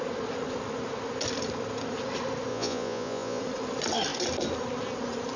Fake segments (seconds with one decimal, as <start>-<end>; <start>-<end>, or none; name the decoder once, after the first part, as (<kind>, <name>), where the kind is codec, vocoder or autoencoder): 2.5-3.4 (vocoder, Vocos)